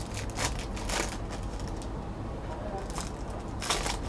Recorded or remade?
recorded